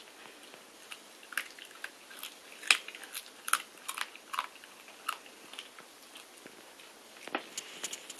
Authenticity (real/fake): real